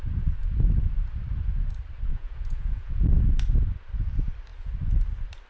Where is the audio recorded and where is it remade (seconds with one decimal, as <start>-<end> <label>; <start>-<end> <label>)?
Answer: 0.0-2.1 recorded; 2.1-3.2 remade; 3.2-5.5 recorded